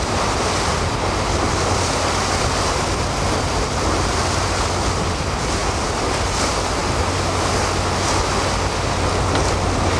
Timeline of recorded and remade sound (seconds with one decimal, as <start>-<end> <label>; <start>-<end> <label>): 0.0-10.0 recorded